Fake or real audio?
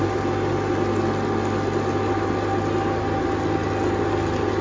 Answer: real